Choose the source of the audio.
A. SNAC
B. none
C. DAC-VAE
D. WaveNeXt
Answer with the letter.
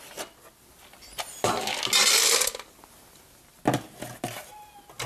B